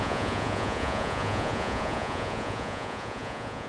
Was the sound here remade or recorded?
remade